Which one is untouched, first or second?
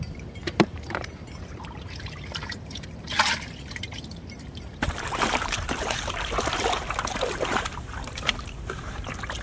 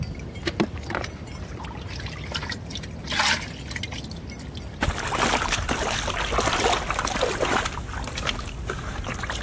second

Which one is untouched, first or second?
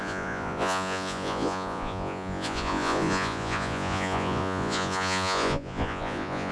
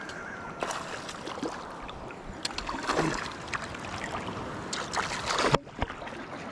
second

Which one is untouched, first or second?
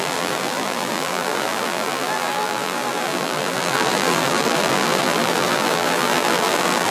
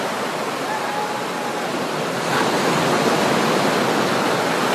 second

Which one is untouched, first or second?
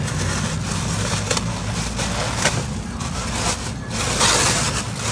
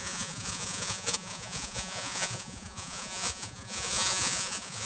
first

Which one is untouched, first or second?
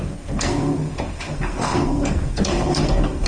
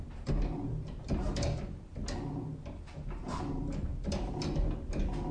second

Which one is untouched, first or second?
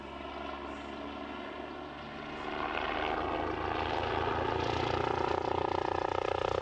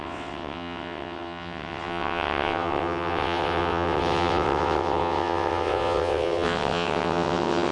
first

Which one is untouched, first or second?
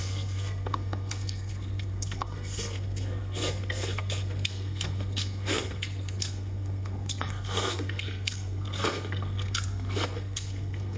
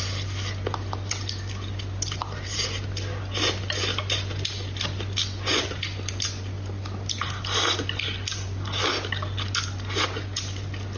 second